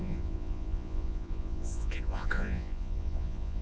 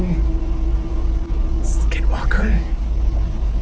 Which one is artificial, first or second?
first